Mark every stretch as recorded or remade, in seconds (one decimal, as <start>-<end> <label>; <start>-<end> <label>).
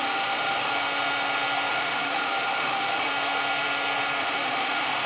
0.0-0.7 remade; 0.7-1.7 recorded; 1.7-3.1 remade; 3.1-4.2 recorded; 4.2-5.1 remade